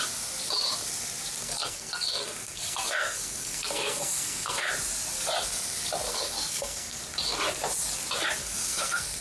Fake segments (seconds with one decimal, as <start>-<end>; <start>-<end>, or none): 1.4-4.7; 6.1-7.0; 8.4-9.2